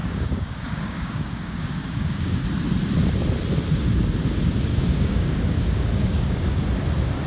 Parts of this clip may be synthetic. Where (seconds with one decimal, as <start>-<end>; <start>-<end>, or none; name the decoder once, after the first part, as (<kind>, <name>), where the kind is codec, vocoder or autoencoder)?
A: 0.0-2.4 (codec, DAC); 4.7-6.6